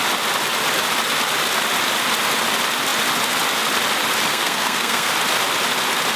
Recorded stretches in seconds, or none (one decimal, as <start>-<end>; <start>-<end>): 0.0-4.3; 5.1-6.2